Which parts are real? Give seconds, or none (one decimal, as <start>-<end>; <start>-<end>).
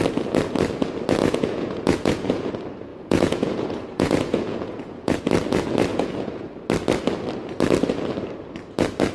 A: 0.0-1.2; 2.5-2.9; 5.2-5.9; 6.5-9.1